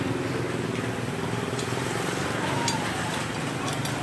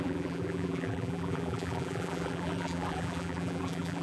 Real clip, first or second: first